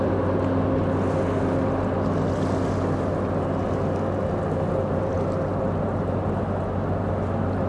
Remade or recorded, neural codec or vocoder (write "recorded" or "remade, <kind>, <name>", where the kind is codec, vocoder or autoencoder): recorded